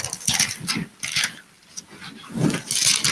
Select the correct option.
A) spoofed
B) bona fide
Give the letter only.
B